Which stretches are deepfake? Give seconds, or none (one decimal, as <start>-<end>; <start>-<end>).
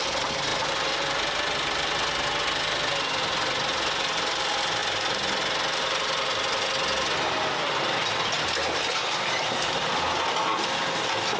none